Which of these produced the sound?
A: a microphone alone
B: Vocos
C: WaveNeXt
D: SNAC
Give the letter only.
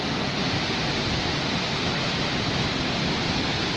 A